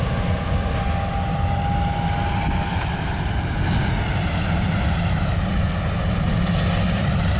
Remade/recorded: recorded